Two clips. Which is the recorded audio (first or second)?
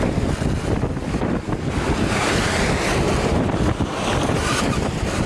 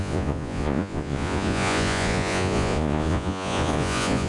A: first